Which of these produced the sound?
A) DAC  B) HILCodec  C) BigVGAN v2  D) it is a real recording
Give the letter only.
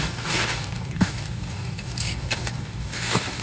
A